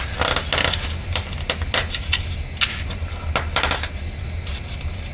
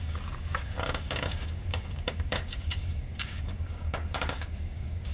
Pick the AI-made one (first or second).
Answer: second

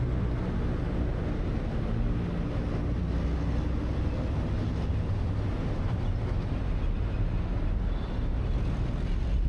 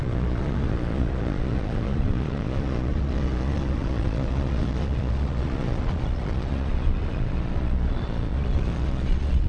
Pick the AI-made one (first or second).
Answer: second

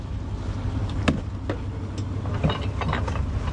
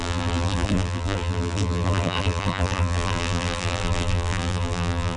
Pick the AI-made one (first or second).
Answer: second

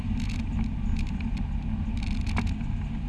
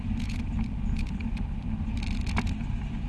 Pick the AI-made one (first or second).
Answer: second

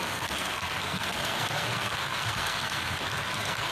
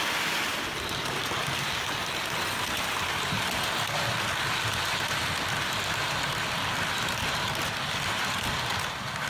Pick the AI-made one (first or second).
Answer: first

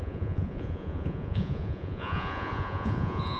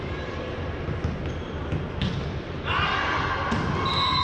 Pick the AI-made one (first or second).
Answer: first